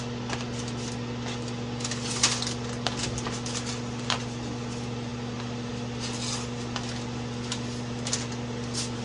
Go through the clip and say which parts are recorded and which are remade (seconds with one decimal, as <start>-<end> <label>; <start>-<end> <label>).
0.0-9.0 recorded